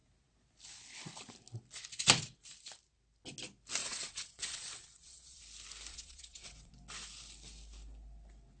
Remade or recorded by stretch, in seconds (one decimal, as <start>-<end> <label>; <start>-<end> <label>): 0.0-3.8 recorded; 3.8-5.4 remade; 5.4-5.9 recorded; 5.9-6.7 remade; 6.7-8.6 recorded